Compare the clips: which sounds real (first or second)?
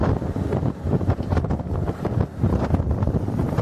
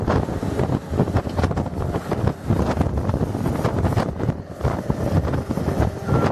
second